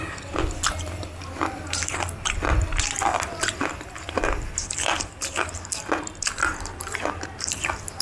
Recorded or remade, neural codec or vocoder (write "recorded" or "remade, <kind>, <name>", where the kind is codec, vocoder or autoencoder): recorded